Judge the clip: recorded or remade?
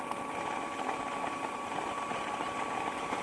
recorded